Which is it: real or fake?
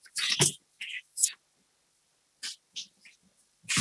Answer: real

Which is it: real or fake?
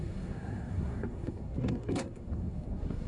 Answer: fake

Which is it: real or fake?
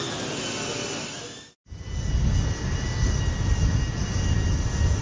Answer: real